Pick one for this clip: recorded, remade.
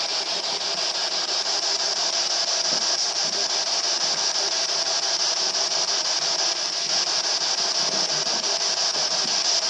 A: recorded